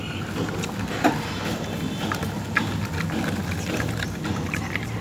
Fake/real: real